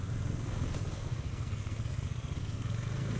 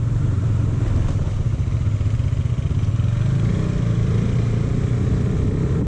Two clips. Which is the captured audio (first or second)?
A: second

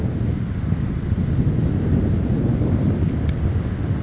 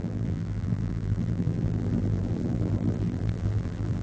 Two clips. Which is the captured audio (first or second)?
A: first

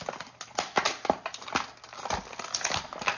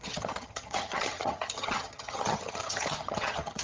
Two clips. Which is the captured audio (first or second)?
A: first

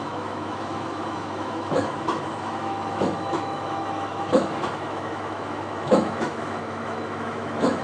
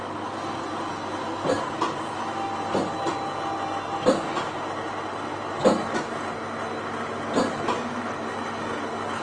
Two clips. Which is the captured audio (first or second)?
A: second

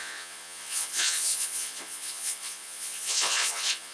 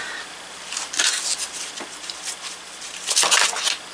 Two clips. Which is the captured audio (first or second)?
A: second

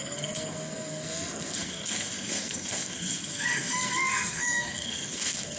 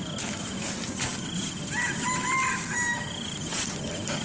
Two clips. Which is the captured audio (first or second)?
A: second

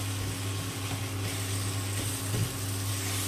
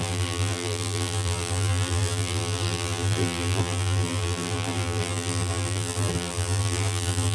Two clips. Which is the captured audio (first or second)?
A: first